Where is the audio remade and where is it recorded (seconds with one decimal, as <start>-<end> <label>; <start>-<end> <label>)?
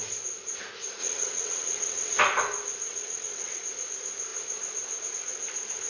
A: 0.0-1.0 recorded; 1.0-2.2 remade; 2.2-2.9 recorded; 2.9-3.6 remade; 3.6-5.9 recorded